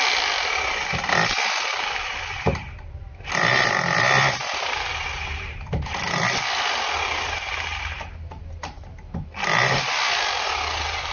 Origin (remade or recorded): recorded